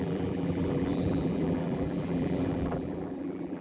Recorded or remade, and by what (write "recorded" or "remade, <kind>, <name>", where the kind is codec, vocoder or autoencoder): remade, vocoder, BigVGAN v2